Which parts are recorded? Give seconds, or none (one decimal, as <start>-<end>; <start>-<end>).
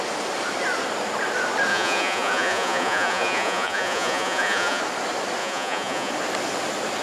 0.0-1.7; 4.8-5.4; 6.1-7.0